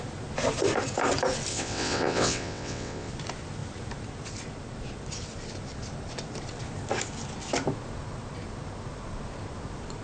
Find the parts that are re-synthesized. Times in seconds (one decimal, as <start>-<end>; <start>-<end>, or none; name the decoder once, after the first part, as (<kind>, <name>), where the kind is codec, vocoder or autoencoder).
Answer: 1.5-3.1 (vocoder, WaveNeXt)